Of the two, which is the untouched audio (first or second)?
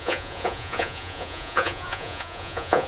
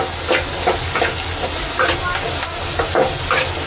second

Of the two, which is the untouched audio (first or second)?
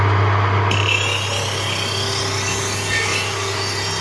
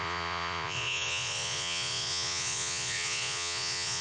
first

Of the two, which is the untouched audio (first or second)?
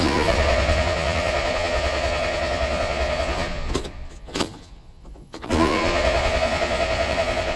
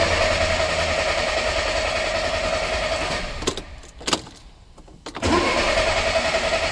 second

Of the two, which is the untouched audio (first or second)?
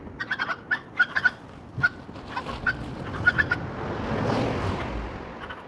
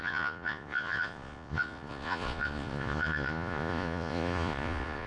first